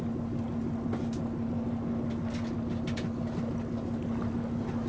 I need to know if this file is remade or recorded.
recorded